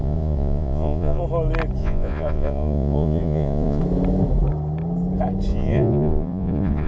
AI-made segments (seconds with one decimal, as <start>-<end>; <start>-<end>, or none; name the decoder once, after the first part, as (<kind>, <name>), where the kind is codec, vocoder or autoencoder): 0.0-1.2 (vocoder, Vocos); 1.8-3.8; 5.5-6.9